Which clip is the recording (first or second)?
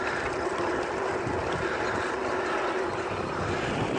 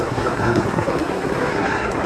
first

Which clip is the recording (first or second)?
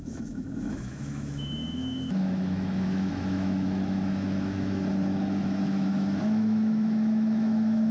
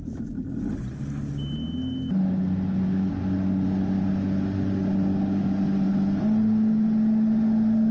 second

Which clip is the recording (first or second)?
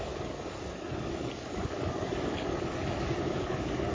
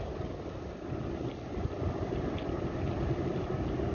second